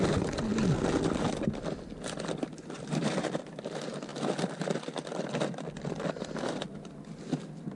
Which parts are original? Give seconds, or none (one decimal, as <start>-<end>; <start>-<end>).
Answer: 0.0-7.8